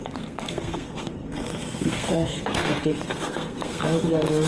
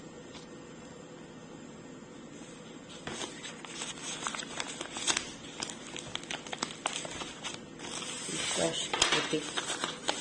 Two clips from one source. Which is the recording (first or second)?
second